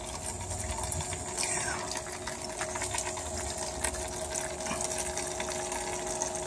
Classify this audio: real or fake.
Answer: real